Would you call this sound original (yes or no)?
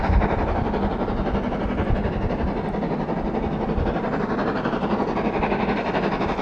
yes